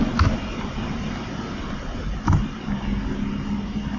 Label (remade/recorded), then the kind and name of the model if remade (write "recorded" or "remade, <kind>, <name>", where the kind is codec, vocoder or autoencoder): recorded